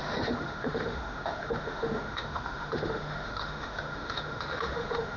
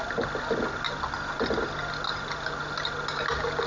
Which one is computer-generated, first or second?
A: first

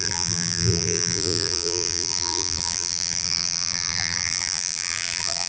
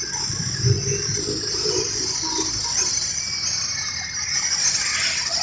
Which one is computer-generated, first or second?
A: first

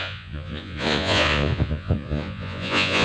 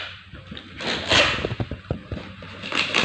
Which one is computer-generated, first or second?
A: first